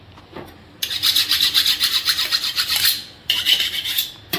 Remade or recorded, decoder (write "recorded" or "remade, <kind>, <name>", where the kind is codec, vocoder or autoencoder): recorded